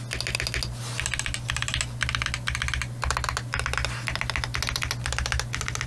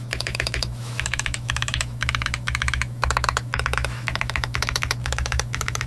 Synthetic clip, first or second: second